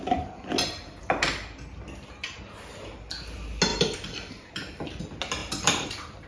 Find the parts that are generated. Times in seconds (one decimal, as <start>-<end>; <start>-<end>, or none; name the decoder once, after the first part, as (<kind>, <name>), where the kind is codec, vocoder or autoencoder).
3.7-5.0 (vocoder, BigVGAN v2); 5.4-6.3